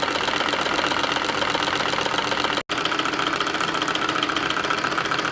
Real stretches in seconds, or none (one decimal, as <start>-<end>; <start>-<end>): 0.0-5.3